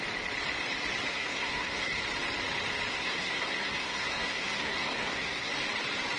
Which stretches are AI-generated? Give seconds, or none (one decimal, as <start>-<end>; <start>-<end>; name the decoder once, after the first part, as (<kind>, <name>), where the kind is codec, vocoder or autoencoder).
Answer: 1.1-2.0 (codec, SNAC); 2.9-5.5